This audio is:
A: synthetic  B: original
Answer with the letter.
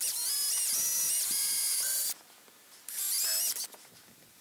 B